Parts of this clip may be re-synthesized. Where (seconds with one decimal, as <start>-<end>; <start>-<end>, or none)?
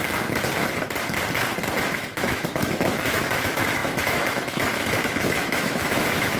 1.9-6.4